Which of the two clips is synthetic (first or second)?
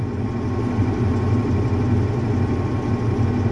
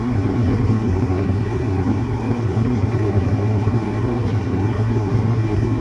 second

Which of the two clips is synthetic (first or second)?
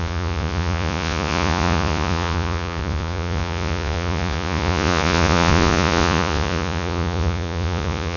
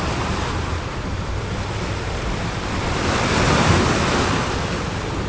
first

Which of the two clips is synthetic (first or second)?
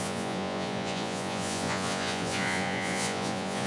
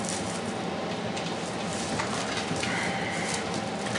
first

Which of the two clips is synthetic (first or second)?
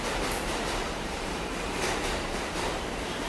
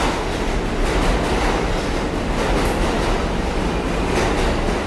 first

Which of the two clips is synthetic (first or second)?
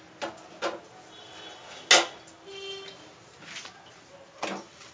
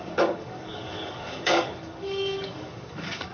second